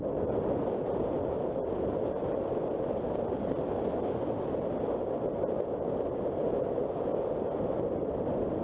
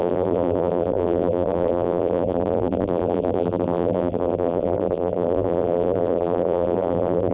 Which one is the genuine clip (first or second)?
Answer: first